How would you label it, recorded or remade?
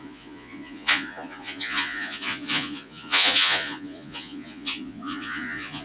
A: remade